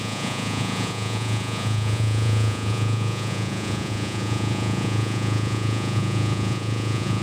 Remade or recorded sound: remade